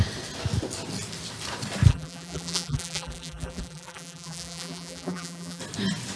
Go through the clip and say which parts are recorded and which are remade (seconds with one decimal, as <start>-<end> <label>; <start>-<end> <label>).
0.0-1.9 recorded; 1.9-5.6 remade; 5.6-6.2 recorded